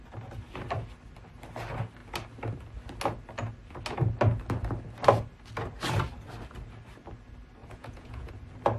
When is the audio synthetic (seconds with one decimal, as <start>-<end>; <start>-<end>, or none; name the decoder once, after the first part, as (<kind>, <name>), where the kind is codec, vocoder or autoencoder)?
7.6-8.3 (vocoder, Vocos)